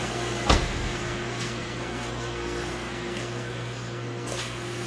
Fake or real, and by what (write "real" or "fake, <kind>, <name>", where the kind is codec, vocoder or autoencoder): fake, codec, SNAC